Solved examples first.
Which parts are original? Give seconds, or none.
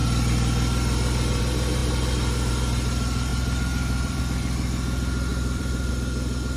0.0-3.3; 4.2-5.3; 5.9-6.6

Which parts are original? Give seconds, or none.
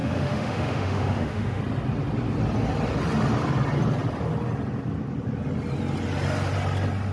1.6-7.1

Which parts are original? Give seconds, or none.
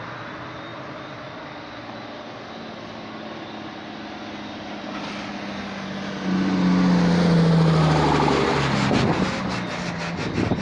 0.0-10.6